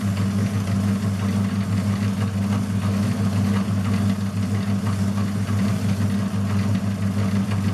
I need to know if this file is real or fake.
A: real